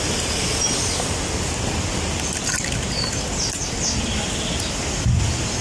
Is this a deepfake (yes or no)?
no